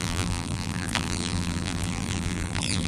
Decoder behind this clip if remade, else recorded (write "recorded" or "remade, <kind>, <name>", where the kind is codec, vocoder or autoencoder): remade, vocoder, BigVGAN v2